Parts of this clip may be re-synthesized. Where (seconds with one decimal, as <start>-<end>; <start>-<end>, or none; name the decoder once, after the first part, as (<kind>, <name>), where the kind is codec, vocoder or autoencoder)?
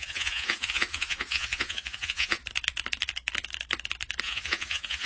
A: 0.0-2.4 (vocoder, Vocos); 4.2-5.1